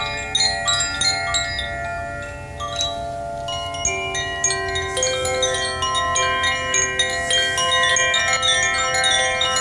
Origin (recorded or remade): recorded